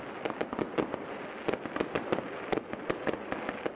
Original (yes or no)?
yes